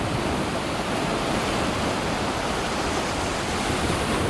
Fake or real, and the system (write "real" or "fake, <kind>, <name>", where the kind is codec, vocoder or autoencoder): real